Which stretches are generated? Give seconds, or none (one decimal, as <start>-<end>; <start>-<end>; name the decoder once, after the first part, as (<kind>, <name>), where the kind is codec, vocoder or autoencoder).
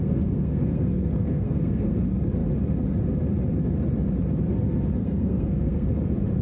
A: 0.0-2.0 (codec, SNAC); 5.0-5.9